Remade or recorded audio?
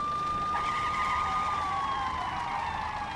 recorded